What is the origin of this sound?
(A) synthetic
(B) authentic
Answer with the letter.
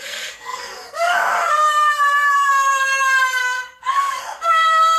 A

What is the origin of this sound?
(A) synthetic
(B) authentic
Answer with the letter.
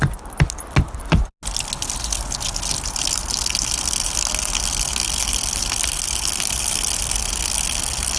B